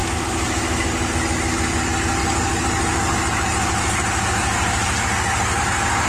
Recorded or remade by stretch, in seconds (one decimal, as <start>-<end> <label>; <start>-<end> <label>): 0.0-0.6 remade; 0.6-6.1 recorded